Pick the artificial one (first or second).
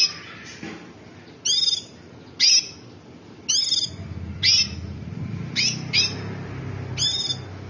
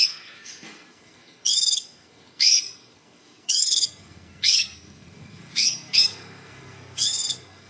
second